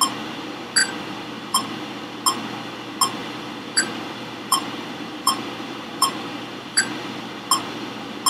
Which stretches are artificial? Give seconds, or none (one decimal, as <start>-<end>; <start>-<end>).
0.8-1.8; 3.2-7.3